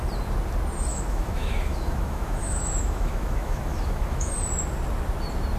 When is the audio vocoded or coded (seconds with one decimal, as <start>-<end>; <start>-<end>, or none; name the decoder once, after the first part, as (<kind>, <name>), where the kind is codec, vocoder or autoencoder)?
0.9-4.3 (autoencoder, DAC-VAE)